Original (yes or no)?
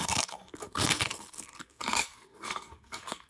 no